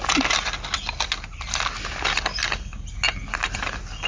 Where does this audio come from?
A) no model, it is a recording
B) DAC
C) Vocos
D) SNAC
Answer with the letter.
A